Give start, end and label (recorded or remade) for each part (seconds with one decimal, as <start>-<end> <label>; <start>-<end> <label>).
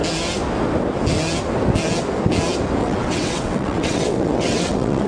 0.0-2.8 recorded; 2.8-5.1 remade